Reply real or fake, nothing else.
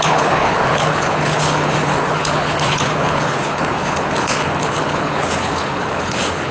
fake